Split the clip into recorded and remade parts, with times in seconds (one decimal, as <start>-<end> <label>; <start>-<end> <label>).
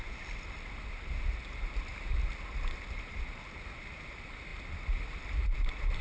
0.0-6.0 recorded